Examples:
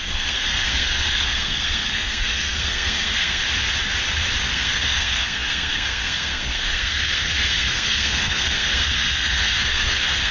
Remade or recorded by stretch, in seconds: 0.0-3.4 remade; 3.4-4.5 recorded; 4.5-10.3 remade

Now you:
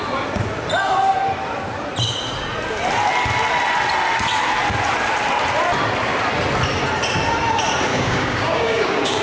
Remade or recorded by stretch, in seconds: 0.0-7.9 recorded; 7.9-9.2 remade